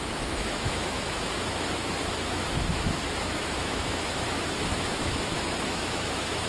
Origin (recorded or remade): remade